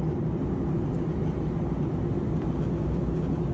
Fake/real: real